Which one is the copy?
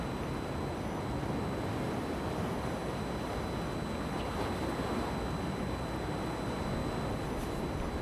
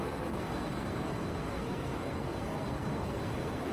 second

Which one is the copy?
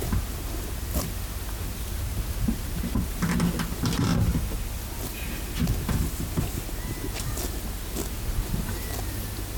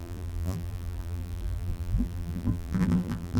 second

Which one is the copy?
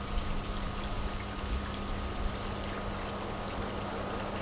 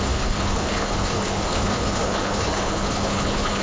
second